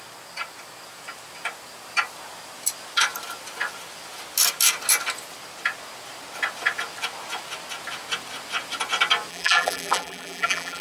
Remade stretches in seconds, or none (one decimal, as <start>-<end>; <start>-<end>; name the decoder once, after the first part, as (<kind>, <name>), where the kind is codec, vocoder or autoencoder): 9.3-10.8 (vocoder, BigVGAN v2)